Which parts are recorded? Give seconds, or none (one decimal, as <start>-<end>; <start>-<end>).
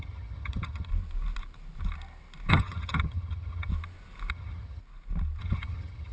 0.9-2.5; 3.7-4.3; 4.8-5.4